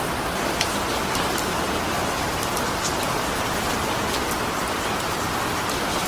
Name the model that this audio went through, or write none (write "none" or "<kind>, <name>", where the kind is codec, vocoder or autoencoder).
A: none